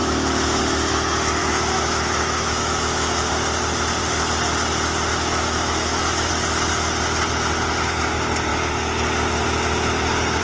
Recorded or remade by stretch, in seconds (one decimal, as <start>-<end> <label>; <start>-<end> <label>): 0.0-0.6 remade; 0.6-1.4 recorded; 1.4-3.3 remade; 3.3-5.1 recorded; 5.1-6.3 remade; 6.3-10.4 recorded